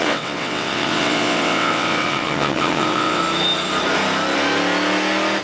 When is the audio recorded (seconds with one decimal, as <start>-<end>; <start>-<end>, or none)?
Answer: 3.2-5.4